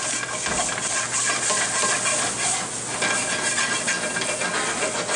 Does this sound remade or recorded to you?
recorded